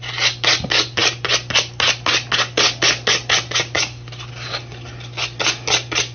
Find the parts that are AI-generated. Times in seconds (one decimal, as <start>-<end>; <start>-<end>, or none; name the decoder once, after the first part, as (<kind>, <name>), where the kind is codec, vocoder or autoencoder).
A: none